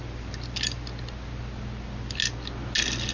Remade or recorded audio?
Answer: recorded